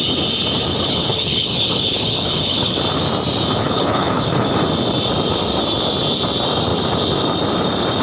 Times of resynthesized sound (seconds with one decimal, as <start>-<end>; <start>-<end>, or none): 0.7-2.8; 3.6-4.6